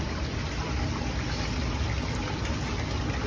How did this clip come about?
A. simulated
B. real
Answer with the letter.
B